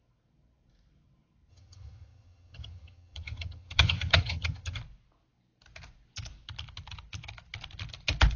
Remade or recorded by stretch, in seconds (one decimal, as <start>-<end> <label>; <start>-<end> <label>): 0.0-1.5 recorded; 1.5-4.8 remade; 4.8-8.4 recorded